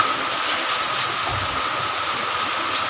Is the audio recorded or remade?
recorded